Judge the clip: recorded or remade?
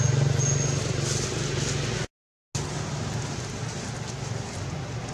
recorded